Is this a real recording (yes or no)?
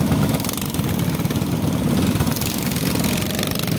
yes